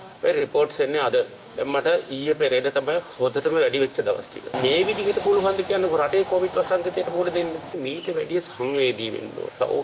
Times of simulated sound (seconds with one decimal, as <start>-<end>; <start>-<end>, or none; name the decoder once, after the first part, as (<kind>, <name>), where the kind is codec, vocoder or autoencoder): 0.0-0.4 (codec, DAC); 1.1-9.8

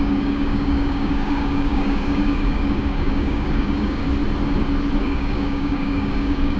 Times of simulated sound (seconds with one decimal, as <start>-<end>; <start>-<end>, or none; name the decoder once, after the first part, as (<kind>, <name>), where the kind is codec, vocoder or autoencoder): 0.0-4.0 (codec, DAC); 5.0-6.6

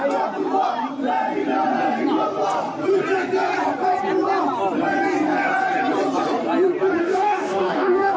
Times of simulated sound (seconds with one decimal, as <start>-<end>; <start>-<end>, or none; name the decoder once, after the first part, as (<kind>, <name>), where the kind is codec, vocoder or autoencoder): 7.0-8.2 (codec, DAC)

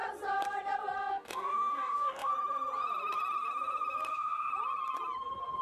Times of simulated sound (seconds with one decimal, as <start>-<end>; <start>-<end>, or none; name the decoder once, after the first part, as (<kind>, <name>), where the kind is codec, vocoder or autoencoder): 1.1-2.3 (codec, DAC); 4.1-4.5

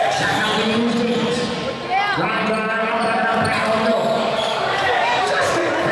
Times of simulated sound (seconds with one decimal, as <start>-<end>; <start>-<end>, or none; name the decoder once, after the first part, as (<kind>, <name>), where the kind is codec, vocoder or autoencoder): 0.0-0.4 (codec, DAC); 3.9-5.9

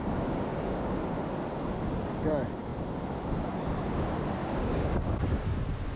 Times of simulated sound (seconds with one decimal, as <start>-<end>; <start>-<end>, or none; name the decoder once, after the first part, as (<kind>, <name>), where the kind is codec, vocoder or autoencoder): 0.5-1.0 (codec, DAC); 4.4-5.6